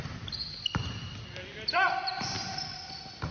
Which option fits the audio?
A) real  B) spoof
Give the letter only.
A